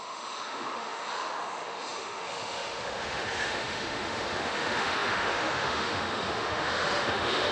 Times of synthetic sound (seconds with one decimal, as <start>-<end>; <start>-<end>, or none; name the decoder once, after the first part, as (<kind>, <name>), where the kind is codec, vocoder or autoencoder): 0.0-7.5 (autoencoder, DAC-VAE)